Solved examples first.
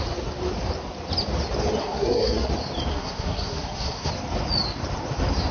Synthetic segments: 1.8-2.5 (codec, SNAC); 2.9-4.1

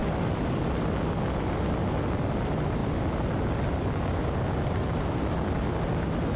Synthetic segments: none

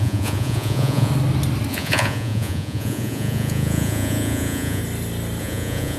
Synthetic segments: 0.0-1.1 (vocoder, Vocos); 1.7-4.8; 5.4-6.0

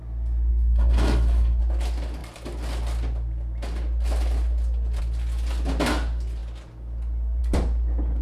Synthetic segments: 0.5-1.6 (codec, SNAC)

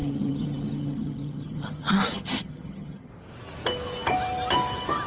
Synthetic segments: 0.0-3.1 (vocoder, HiFi-GAN)

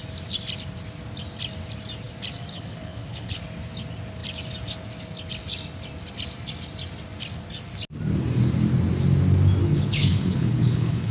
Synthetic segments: 2.5-3.4 (codec, HILCodec); 9.6-11.1

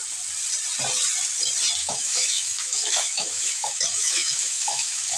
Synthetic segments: 1.8-5.2 (autoencoder, DAC-VAE)

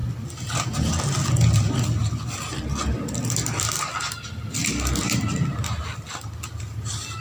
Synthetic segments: none